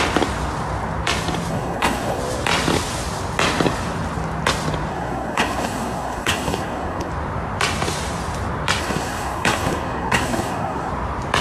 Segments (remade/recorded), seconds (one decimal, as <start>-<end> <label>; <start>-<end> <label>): 0.0-1.5 recorded; 1.5-2.2 remade; 2.2-4.9 recorded; 4.9-7.1 remade; 7.1-8.8 recorded; 8.8-10.9 remade; 10.9-11.4 recorded